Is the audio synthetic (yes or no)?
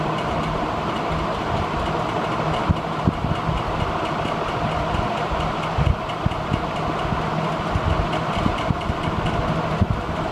no